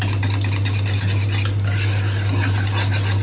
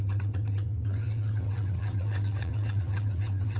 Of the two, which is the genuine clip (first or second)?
first